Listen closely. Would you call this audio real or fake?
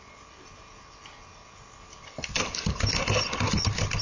real